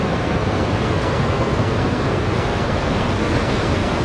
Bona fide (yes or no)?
no